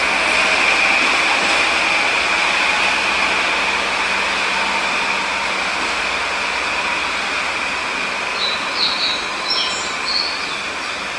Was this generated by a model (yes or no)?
no